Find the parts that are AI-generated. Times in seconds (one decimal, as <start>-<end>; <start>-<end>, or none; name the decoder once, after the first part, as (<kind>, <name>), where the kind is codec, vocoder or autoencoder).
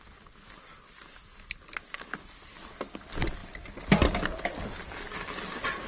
none